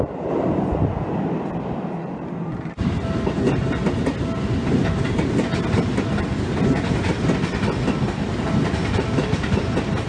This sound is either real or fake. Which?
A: real